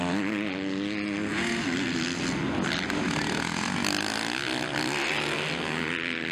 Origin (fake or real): real